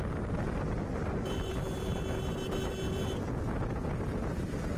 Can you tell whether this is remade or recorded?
recorded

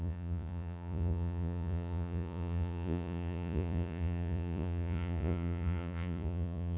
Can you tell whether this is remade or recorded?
remade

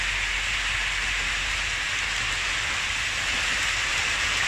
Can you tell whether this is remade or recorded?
recorded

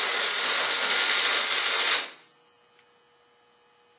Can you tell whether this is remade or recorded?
recorded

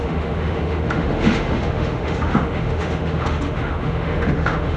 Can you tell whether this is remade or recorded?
remade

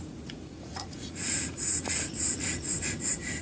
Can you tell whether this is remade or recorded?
remade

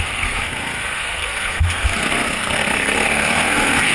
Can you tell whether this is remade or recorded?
remade